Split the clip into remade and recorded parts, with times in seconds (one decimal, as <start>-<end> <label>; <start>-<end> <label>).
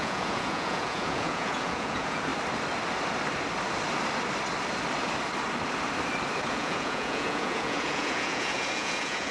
0.0-2.3 remade; 2.3-6.5 recorded; 6.5-9.3 remade